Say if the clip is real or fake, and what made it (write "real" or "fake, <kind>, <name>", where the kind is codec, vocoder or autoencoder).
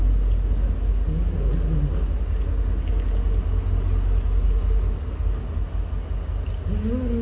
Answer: real